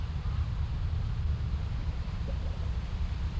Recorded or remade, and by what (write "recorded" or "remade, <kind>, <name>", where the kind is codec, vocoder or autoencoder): remade, vocoder, BigVGAN v2